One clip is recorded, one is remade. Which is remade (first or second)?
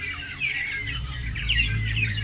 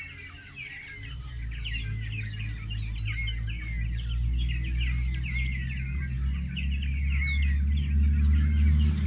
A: first